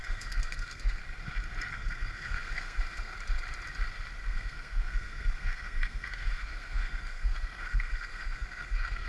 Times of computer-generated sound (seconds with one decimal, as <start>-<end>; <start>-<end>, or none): 0.0-1.0; 1.7-3.1; 4.2-9.1